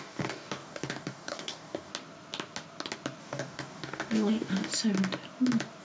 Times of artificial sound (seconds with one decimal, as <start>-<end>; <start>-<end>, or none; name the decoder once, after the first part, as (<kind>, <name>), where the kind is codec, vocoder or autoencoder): 0.0-1.9 (codec, DAC); 3.2-4.7